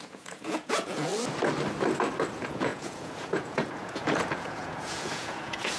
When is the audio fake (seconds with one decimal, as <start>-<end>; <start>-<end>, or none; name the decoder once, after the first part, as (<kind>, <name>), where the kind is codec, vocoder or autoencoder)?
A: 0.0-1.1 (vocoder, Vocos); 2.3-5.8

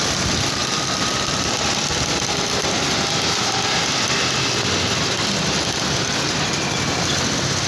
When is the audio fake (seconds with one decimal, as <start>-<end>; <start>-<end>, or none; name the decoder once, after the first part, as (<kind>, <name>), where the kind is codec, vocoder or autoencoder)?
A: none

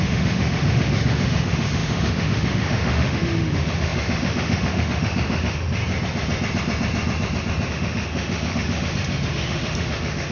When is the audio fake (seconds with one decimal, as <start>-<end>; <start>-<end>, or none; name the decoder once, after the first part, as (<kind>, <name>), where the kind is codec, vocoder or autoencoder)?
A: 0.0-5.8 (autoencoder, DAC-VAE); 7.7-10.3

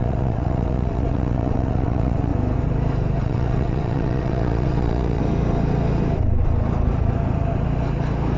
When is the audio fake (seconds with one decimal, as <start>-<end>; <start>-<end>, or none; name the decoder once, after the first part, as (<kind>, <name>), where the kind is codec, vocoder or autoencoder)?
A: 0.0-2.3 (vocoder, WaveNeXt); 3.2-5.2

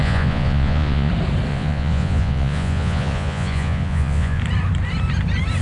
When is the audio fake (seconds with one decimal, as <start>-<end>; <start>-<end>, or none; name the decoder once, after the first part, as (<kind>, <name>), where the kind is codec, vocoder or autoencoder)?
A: 0.0-1.1 (vocoder, Vocos); 1.5-4.4

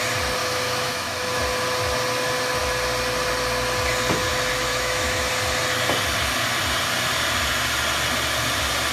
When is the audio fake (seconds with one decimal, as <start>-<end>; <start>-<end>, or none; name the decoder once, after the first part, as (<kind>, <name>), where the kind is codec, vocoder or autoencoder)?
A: 0.4-1.4 (autoencoder, DAC-VAE); 4.7-5.3

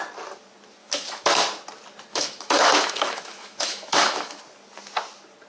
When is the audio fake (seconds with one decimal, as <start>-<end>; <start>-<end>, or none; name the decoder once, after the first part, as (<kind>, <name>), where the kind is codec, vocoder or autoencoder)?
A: 0.8-1.4 (autoencoder, DAC-VAE); 2.1-4.4